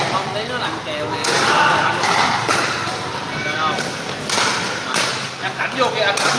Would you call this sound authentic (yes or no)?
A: yes